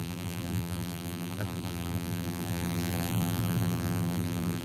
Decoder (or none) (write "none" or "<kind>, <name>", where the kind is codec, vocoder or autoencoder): vocoder, BigVGAN v2